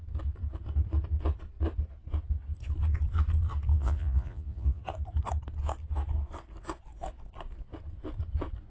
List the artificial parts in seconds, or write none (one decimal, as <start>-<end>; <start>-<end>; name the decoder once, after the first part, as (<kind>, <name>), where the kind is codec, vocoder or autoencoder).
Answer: 3.7-4.8 (vocoder, Vocos)